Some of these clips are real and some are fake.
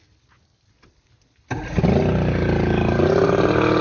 real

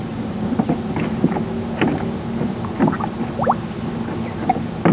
real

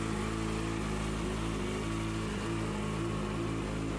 real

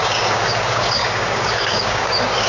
fake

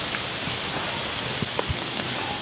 real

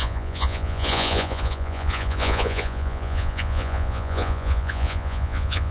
fake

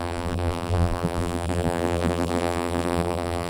fake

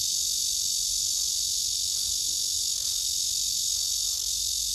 fake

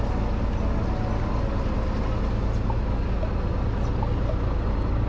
real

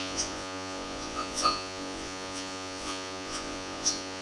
fake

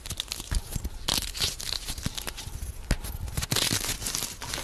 real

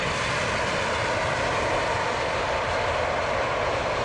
real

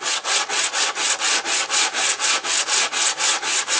real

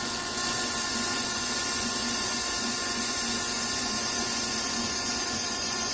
fake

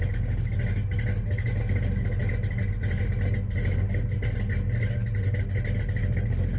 real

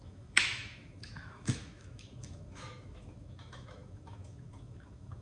fake